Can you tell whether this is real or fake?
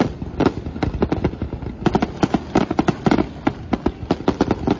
real